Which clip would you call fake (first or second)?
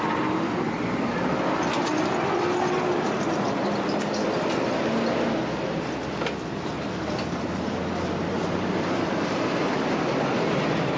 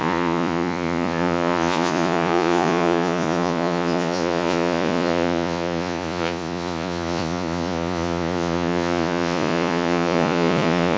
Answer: second